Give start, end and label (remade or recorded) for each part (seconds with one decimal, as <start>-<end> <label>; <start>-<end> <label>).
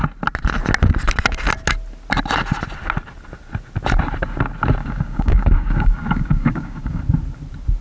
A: 0.0-4.8 recorded; 4.8-7.0 remade; 7.0-7.8 recorded